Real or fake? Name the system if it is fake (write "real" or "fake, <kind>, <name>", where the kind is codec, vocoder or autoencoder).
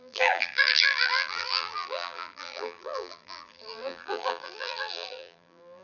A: fake, vocoder, BigVGAN v2